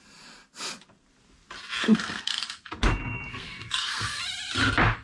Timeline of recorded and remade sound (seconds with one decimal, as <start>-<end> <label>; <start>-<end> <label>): 0.0-1.8 recorded; 1.8-2.7 remade; 2.7-3.3 recorded; 3.3-4.2 remade; 4.2-5.0 recorded